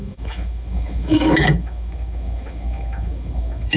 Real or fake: fake